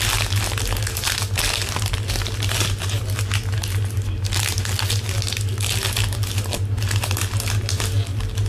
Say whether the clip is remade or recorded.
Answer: recorded